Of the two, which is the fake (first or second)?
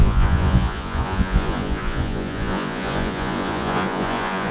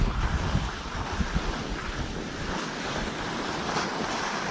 first